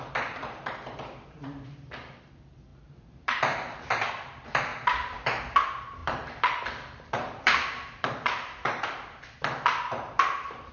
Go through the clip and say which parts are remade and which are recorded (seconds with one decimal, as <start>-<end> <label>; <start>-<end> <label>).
0.0-4.7 remade; 4.7-5.4 recorded; 5.4-10.7 remade